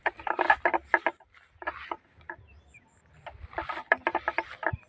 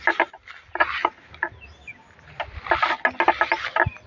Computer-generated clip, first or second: first